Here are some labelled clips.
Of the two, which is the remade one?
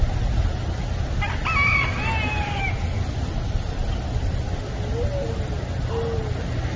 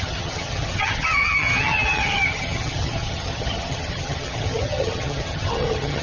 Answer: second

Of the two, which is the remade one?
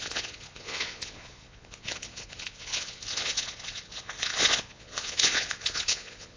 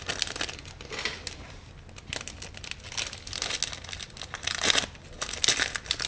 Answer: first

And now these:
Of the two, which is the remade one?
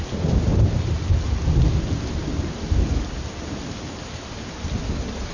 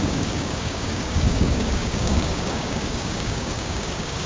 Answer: second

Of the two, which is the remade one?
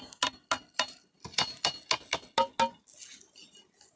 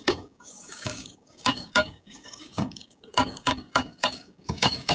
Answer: second